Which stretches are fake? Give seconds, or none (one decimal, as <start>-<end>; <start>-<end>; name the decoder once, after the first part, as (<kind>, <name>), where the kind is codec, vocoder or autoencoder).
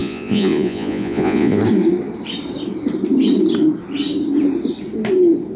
0.0-1.6 (vocoder, Vocos)